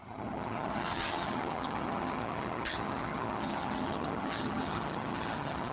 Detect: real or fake fake